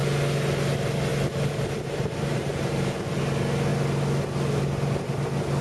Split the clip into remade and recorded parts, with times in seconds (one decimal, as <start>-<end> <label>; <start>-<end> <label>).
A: 0.0-1.1 recorded; 1.1-3.2 remade; 3.2-5.6 recorded